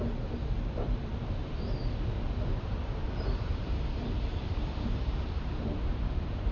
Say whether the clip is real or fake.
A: fake